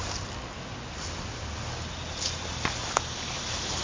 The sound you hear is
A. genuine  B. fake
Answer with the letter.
A